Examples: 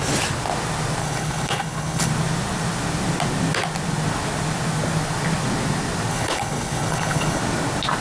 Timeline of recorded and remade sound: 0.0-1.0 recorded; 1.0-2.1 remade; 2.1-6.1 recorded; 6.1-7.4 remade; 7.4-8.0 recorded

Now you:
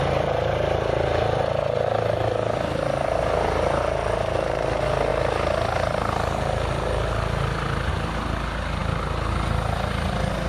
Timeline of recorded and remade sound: 0.0-10.5 recorded

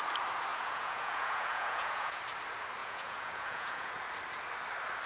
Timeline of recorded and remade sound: 0.0-0.5 recorded; 0.5-2.2 remade; 2.2-2.8 recorded; 2.8-3.9 remade; 3.9-5.1 recorded